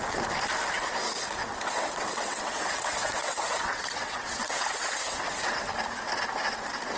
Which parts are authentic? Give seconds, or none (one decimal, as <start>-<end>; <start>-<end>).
0.0-1.4; 5.6-7.0